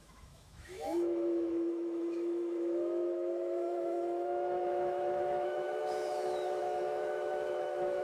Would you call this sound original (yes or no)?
no